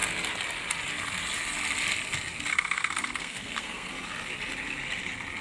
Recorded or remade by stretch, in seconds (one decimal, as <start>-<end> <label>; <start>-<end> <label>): 0.0-2.5 recorded; 2.5-3.9 remade; 3.9-5.4 recorded